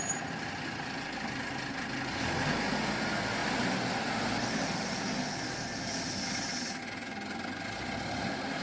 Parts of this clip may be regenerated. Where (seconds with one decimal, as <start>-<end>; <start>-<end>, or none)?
none